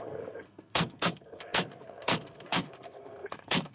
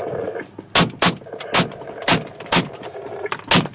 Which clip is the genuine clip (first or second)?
second